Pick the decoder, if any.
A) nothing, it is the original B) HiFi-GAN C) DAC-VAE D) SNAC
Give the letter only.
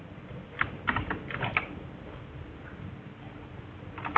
A